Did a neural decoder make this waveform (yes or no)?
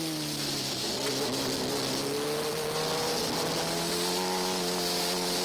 no